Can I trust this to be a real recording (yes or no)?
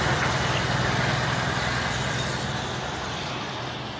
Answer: yes